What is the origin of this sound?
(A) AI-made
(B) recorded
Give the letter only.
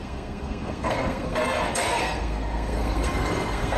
A